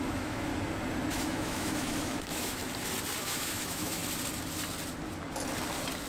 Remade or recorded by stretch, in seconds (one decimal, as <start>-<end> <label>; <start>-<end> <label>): 0.0-0.5 remade; 0.5-1.1 recorded; 1.1-2.6 remade; 2.6-3.2 recorded; 3.2-4.0 remade; 4.0-6.1 recorded